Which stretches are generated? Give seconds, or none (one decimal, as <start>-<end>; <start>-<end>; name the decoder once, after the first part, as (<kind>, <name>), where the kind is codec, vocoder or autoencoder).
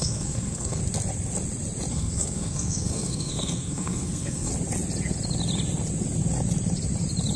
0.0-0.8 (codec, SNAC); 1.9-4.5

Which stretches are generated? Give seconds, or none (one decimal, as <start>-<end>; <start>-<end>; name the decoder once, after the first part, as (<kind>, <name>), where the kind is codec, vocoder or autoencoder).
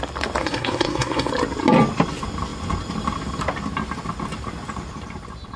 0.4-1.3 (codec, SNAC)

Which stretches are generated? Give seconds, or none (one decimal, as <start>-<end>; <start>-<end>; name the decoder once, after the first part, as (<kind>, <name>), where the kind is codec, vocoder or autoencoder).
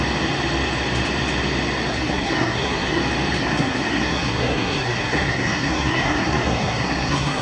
1.9-3.0 (codec, SNAC); 3.4-7.4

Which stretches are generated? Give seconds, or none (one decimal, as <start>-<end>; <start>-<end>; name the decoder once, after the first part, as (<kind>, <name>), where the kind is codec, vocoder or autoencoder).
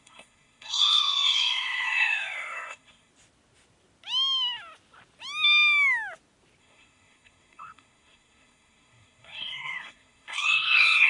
0.0-3.1 (codec, SNAC); 6.6-11.1